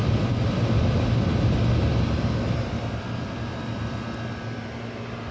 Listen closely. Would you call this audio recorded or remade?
recorded